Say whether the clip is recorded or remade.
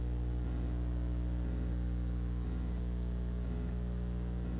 recorded